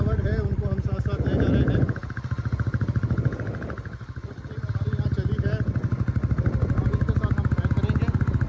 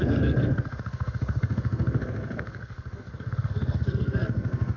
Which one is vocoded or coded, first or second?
second